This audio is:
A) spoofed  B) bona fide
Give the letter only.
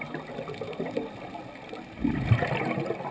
B